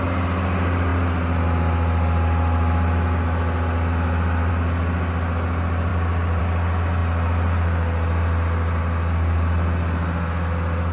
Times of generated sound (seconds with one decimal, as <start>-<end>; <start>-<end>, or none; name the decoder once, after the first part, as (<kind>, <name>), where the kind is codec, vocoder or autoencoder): none